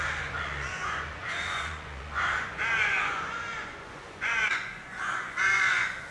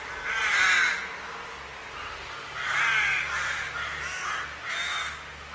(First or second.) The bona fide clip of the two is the second